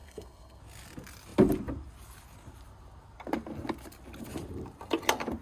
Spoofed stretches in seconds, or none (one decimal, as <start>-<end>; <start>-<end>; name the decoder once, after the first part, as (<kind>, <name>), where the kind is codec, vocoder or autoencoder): 0.0-0.6 (codec, SNAC)